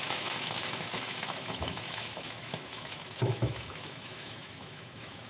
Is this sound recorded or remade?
remade